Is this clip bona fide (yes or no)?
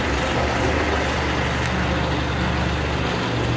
yes